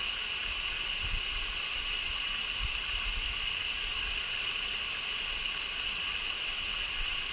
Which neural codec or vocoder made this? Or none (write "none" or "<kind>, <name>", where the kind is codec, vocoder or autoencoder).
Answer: none